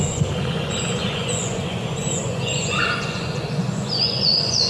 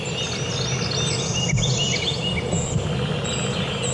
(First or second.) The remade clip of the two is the first